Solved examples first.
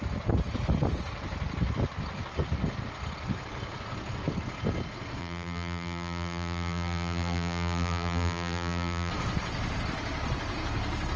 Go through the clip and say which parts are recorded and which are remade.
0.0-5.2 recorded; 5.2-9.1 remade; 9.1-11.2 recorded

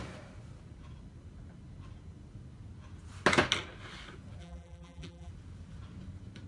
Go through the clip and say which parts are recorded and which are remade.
0.0-4.4 recorded; 4.4-5.3 remade; 5.3-6.5 recorded

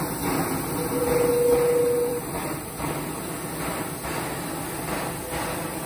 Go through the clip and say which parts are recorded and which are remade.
0.0-2.1 recorded; 2.1-3.2 remade; 3.2-5.9 recorded

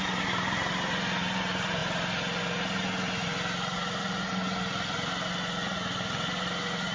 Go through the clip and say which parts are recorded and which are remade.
0.0-1.8 recorded; 1.8-2.4 remade; 2.4-6.9 recorded

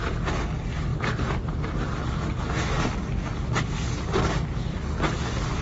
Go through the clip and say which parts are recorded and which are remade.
0.0-5.6 recorded

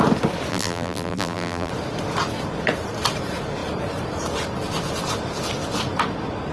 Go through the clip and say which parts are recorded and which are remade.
0.0-0.5 recorded; 0.5-1.7 remade; 1.7-6.5 recorded